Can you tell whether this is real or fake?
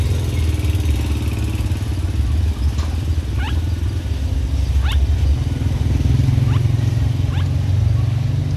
real